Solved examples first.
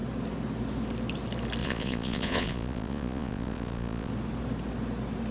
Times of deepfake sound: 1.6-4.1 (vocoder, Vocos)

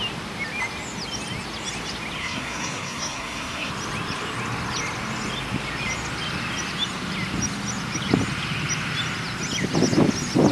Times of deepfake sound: 2.2-3.7 (codec, SNAC)

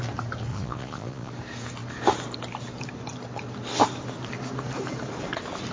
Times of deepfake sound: 0.5-1.3 (vocoder, Vocos)

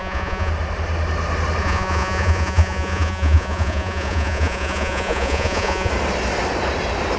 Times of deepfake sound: 0.0-0.5 (vocoder, Vocos); 1.6-5.9

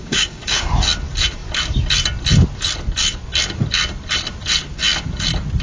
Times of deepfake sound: 0.0-0.7 (codec, DAC)